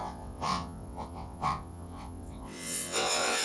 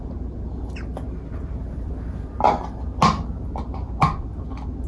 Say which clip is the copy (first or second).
first